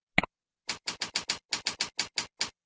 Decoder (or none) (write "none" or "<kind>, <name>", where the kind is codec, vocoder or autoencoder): none